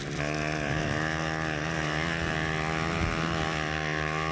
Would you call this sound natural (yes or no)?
yes